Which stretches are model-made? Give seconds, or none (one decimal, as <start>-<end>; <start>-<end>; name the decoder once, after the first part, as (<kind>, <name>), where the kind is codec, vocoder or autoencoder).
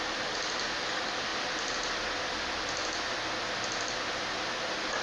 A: none